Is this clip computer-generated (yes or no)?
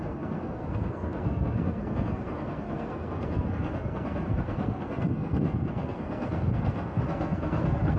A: yes